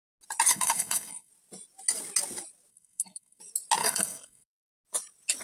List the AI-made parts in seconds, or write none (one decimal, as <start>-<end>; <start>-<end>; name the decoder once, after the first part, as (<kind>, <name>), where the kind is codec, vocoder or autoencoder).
0.5-1.3 (codec, SNAC); 2.7-3.4; 3.8-4.7